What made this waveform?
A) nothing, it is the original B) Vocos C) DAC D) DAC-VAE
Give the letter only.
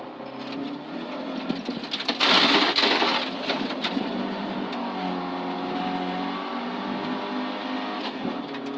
A